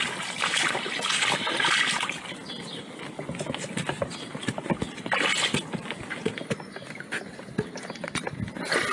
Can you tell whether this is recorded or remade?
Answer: recorded